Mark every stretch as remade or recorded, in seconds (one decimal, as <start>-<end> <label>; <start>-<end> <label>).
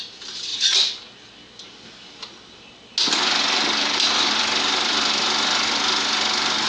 0.0-6.7 recorded